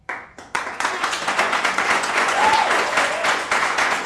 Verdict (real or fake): fake